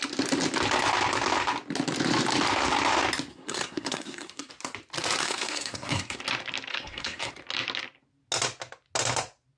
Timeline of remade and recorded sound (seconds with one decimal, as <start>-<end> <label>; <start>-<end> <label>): 0.0-3.3 recorded; 3.3-4.5 remade; 4.5-5.2 recorded; 5.2-6.2 remade; 6.2-6.7 recorded; 6.7-7.3 remade; 7.3-9.6 recorded